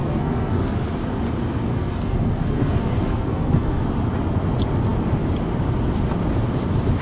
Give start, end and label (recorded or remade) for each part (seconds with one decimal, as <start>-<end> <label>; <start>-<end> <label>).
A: 0.0-0.9 remade; 0.9-1.7 recorded; 1.7-3.8 remade; 3.8-7.0 recorded